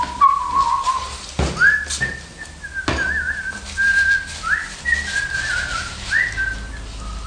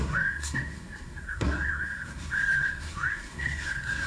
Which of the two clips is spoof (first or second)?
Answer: second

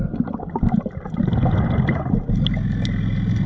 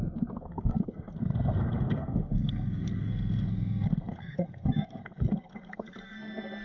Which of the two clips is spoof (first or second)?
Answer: second